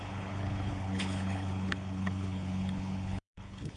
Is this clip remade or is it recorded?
remade